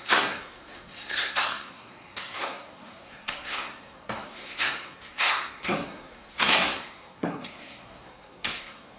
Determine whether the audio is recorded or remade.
remade